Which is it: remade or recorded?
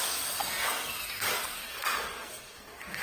remade